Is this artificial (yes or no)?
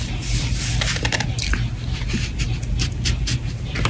no